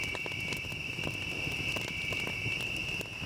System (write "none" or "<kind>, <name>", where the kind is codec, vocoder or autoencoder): vocoder, BigVGAN v2